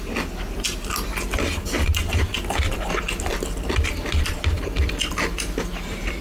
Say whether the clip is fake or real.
real